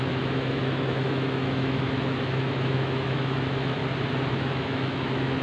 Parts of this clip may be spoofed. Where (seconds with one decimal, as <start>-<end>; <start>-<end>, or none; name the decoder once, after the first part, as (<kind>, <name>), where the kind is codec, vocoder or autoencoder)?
0.0-3.8 (autoencoder, DAC-VAE); 4.3-5.4